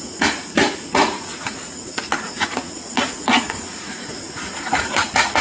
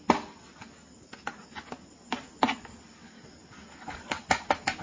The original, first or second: second